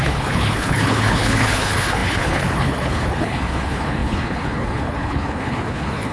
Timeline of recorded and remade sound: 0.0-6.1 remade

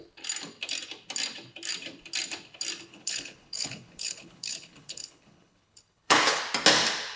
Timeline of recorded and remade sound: 0.0-2.9 recorded; 2.9-6.4 remade; 6.4-7.2 recorded